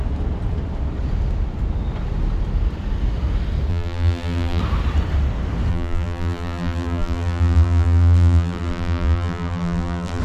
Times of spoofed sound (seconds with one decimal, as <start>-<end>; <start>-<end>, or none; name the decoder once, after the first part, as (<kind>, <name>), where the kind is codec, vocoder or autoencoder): 3.7-4.6 (vocoder, BigVGAN v2); 5.7-10.2